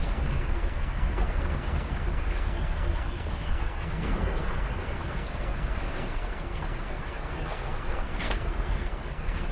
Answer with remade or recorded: remade